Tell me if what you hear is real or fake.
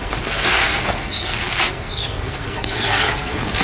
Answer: fake